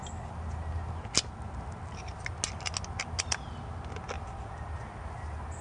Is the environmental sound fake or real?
real